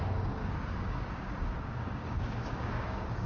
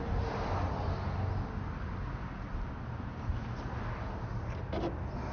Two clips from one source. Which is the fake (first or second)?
first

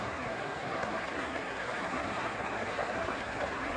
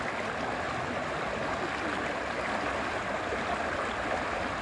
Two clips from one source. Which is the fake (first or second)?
first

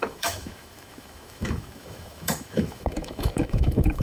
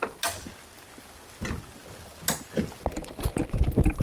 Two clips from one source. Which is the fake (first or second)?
first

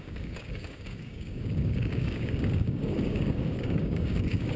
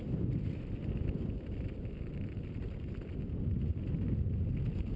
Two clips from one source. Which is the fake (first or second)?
first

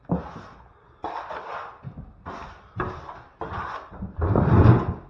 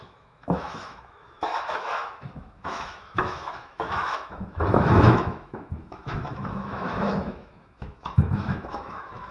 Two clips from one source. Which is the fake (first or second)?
second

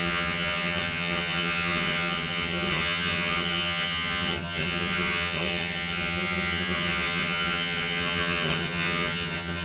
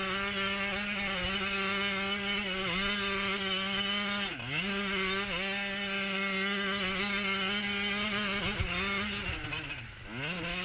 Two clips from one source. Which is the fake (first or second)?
first